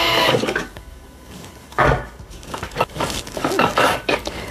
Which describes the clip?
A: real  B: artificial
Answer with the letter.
B